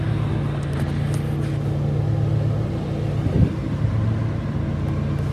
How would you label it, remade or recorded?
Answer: recorded